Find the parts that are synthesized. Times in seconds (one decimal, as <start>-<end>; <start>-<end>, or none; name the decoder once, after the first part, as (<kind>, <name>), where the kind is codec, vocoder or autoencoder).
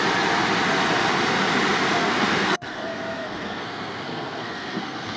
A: 1.9-5.2 (codec, SNAC)